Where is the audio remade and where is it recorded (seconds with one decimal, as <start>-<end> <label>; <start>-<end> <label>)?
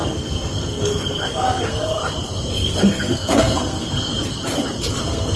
0.0-2.0 remade; 2.0-2.5 recorded; 2.5-4.1 remade; 4.1-5.0 recorded; 5.0-5.4 remade